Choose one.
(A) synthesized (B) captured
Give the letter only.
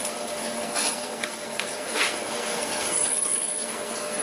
A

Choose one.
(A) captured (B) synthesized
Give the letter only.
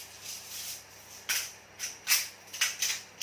A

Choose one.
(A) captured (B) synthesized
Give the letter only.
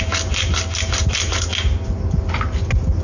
A